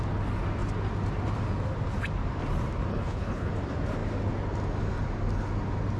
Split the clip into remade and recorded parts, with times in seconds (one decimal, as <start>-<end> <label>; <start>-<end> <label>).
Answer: 0.0-2.9 recorded; 2.9-3.5 remade; 3.5-6.0 recorded